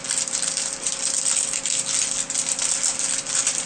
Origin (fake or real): fake